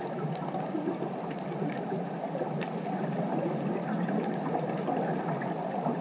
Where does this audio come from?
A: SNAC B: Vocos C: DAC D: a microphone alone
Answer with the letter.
D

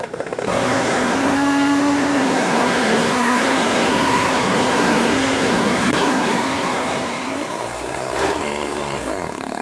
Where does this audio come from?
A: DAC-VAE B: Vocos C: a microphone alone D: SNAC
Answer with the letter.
D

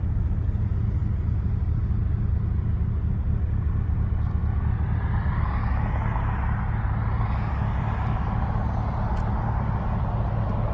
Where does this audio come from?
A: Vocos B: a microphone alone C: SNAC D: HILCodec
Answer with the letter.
B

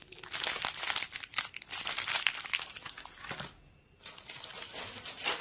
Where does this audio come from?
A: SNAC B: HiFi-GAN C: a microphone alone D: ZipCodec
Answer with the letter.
C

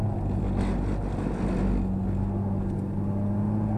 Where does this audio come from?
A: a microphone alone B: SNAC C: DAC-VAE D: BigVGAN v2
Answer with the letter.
A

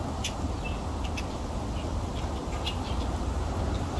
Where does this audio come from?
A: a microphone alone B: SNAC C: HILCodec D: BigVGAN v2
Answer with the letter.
A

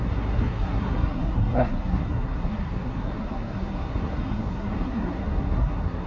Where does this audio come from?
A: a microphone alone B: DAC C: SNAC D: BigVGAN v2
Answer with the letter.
C